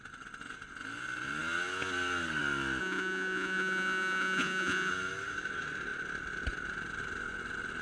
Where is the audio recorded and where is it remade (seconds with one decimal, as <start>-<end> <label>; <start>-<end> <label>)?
0.0-2.8 recorded; 2.8-4.9 remade; 4.9-7.8 recorded